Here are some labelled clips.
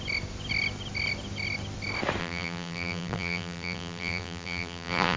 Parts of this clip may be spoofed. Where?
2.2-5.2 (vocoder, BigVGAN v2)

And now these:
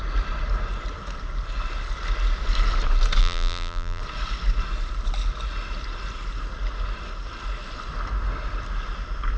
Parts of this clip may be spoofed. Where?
3.2-4.0 (vocoder, BigVGAN v2)

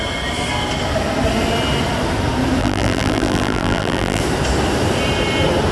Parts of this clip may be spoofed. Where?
2.6-4.2 (vocoder, BigVGAN v2)

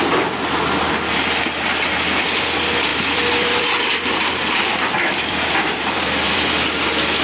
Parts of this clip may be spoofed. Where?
2.9-6.8 (vocoder, BigVGAN v2)